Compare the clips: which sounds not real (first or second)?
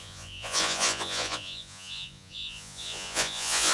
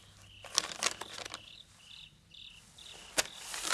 first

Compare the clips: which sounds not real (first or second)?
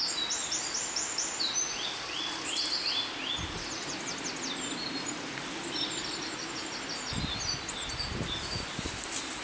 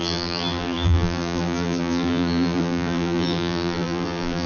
second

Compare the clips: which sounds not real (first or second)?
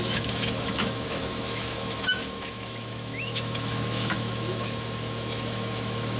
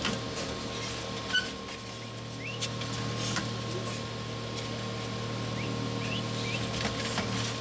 first